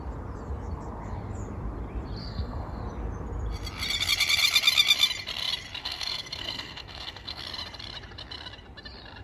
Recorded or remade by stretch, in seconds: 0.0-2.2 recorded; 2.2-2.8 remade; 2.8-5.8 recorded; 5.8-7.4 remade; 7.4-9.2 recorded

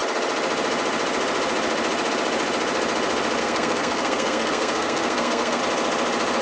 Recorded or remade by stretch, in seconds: 0.0-3.4 recorded; 3.4-5.6 remade; 5.6-6.4 recorded

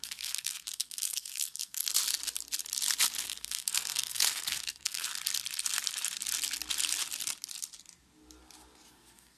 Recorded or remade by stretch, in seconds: 0.0-1.8 remade; 1.8-3.2 recorded; 3.2-5.1 remade; 5.1-8.9 recorded; 8.9-9.4 remade

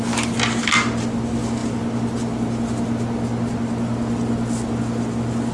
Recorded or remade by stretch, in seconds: 0.0-5.5 recorded

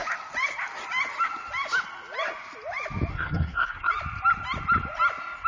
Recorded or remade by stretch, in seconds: 0.0-3.1 recorded; 3.1-3.9 remade; 3.9-5.5 recorded

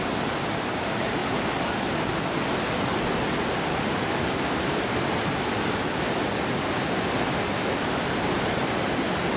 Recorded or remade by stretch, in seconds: 0.0-9.4 recorded

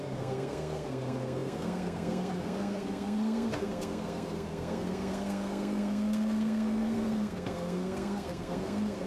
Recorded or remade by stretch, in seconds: 0.0-9.1 remade

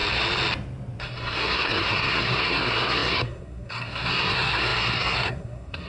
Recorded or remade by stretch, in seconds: 0.0-1.0 recorded; 1.0-5.9 remade